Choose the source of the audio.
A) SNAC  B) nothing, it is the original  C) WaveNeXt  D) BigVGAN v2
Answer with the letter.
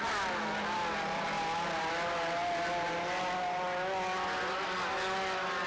B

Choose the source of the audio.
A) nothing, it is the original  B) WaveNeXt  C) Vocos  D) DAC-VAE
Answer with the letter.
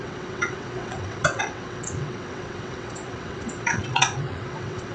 B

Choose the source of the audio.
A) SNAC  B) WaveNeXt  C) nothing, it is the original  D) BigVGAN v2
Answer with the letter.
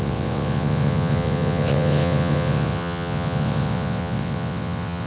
B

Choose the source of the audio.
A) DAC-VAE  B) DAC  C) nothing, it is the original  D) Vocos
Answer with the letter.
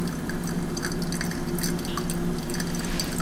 C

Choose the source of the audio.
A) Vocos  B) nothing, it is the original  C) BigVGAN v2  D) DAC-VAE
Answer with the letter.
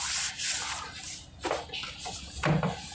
B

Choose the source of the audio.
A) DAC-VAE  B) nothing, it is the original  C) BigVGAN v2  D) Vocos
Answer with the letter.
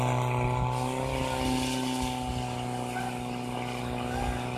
B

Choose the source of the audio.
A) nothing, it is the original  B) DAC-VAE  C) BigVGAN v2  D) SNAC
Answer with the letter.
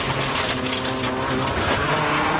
A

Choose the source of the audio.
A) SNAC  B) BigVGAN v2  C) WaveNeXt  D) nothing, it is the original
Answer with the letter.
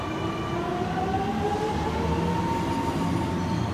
D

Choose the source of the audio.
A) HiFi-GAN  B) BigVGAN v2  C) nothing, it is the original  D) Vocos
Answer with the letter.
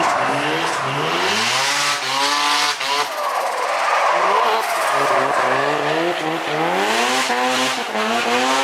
C